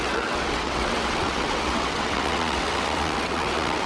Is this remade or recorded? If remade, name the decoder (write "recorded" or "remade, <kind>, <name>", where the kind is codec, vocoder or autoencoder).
remade, vocoder, WaveNeXt